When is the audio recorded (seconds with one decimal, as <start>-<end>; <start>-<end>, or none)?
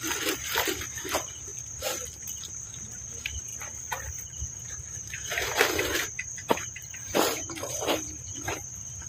1.5-2.8; 3.5-4.6